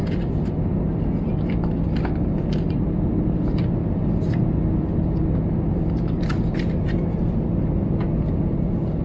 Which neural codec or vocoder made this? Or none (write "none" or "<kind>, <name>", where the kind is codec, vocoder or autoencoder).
none